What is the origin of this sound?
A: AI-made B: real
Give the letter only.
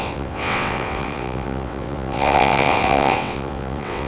A